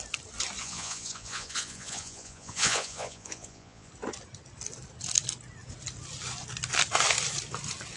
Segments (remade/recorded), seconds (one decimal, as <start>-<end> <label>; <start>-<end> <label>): 0.0-0.6 recorded; 0.6-3.9 remade; 3.9-8.0 recorded